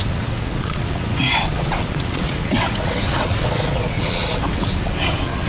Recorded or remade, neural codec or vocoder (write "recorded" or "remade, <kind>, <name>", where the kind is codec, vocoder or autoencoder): remade, vocoder, WaveNeXt